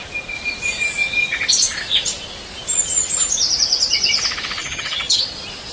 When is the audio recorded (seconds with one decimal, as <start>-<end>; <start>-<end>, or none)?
0.0-4.6; 5.2-5.7